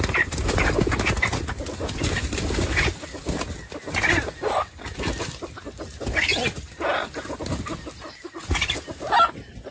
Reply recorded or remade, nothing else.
recorded